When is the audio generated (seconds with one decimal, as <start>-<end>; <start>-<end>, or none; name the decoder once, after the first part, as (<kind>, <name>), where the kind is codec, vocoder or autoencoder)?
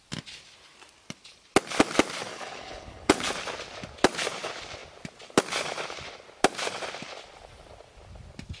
2.3-3.3 (codec, HILCodec)